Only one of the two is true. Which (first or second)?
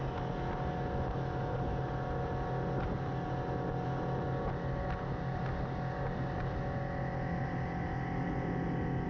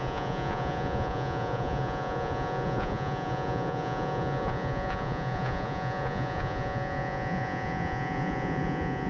first